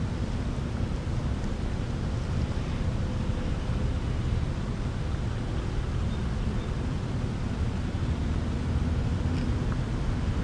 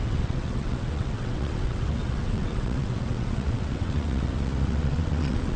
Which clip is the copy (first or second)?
second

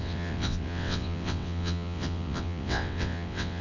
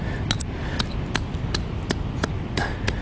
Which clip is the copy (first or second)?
first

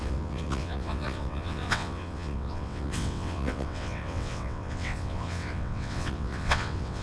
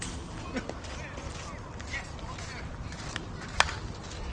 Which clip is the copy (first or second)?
first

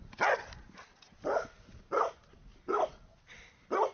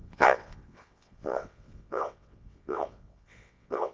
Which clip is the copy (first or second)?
second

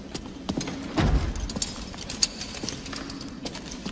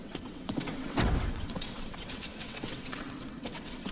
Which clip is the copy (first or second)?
second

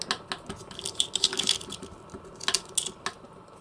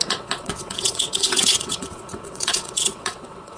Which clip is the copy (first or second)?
second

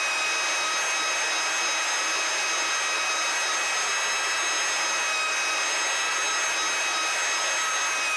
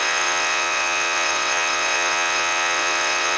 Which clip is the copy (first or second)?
second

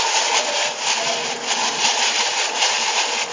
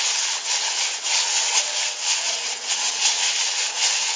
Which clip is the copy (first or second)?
second